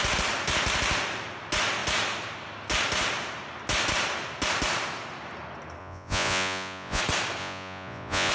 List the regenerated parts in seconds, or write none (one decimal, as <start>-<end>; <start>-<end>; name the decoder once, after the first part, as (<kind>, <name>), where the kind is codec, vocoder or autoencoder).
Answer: 5.8-7.0 (vocoder, Vocos); 7.4-8.3